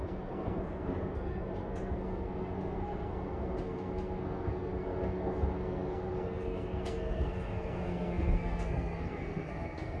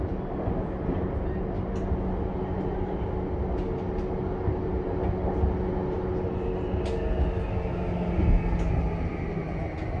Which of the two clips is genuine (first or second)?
second